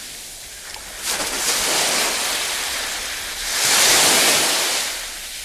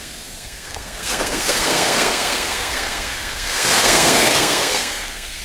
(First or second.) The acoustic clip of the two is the first